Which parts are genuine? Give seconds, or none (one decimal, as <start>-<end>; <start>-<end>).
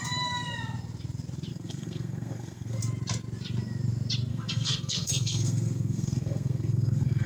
0.0-1.5; 2.8-4.3